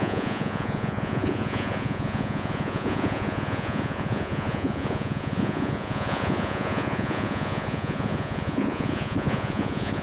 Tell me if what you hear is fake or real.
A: fake